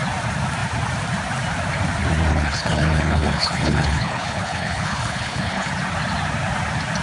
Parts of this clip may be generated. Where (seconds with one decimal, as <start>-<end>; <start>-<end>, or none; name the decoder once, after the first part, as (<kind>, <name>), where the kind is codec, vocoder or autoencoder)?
2.3-5.7 (codec, HILCodec)